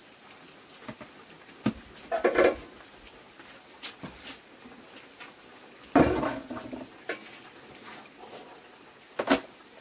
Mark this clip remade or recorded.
recorded